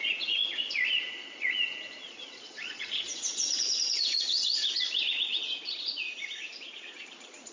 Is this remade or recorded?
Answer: remade